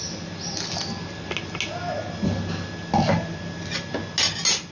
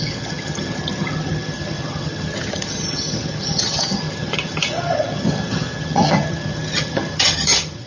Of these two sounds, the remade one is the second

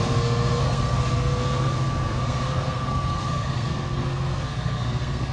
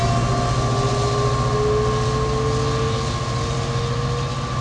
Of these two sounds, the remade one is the first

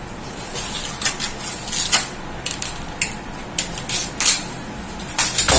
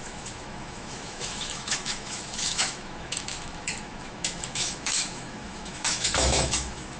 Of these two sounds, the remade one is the second